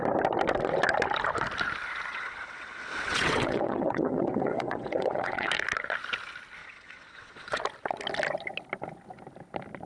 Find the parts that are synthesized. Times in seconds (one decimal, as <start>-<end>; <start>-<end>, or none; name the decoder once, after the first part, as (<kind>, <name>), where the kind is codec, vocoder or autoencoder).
2.1-5.5 (vocoder, WaveNeXt); 6.6-7.6

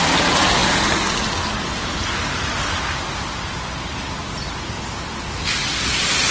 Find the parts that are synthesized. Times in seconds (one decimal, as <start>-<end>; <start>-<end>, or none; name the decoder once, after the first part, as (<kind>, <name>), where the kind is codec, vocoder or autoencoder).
none

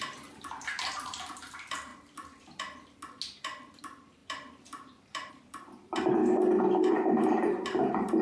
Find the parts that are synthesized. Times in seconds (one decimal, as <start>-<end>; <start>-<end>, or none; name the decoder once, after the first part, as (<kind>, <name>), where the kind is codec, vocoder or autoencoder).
0.0-1.9 (vocoder, BigVGAN v2); 3.8-6.2; 6.9-8.2

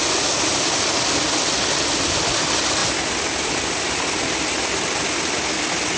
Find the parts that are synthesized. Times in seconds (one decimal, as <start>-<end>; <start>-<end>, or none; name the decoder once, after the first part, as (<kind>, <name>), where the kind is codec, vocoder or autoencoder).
none

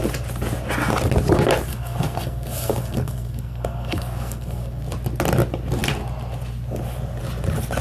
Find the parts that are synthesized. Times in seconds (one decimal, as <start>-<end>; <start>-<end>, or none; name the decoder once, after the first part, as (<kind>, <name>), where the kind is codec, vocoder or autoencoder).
1.7-4.8 (codec, SNAC)